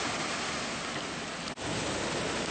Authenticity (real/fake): real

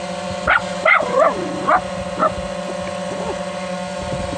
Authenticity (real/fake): real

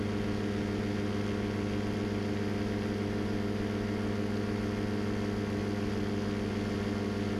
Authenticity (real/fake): real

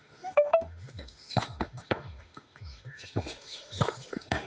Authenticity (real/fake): fake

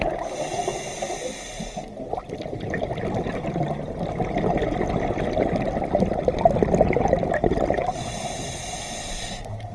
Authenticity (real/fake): real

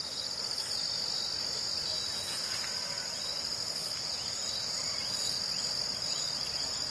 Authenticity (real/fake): real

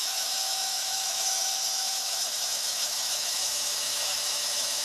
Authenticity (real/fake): fake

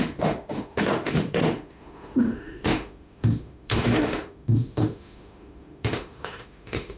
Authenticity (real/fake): fake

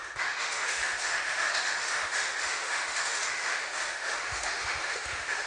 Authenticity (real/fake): fake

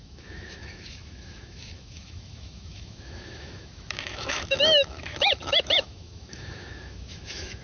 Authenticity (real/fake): fake